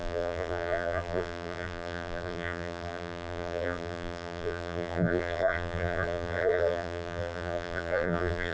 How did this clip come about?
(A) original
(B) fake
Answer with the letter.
B